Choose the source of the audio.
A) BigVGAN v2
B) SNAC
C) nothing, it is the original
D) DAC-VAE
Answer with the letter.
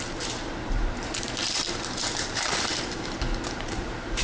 A